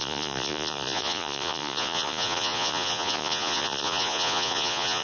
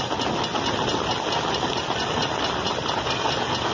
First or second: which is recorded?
second